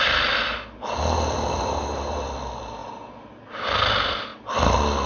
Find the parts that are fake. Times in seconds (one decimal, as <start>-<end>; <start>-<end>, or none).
none